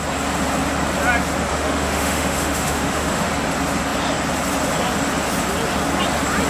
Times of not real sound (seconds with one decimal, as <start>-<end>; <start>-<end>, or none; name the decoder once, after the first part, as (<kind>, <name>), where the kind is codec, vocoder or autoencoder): 1.5-3.3 (autoencoder, DAC-VAE)